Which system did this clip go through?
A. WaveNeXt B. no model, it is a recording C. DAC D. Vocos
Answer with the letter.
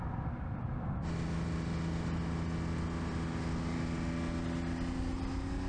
B